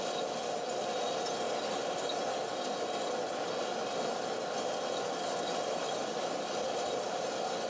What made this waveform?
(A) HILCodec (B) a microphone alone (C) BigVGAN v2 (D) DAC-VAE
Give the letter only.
B